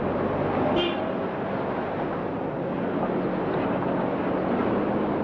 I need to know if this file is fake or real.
real